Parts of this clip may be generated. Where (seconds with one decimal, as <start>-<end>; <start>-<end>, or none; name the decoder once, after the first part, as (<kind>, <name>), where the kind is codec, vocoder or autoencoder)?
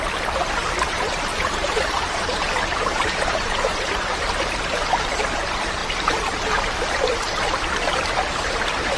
1.3-4.2 (vocoder, BigVGAN v2)